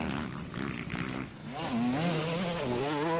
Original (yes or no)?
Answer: yes